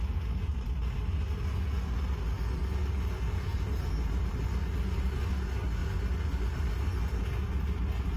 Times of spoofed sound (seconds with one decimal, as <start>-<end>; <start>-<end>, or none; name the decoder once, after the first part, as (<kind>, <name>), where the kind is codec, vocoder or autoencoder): 3.5-5.2 (vocoder, BigVGAN v2)